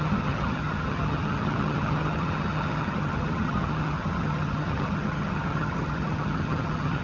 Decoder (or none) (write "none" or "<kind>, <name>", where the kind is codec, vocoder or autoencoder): vocoder, HiFi-GAN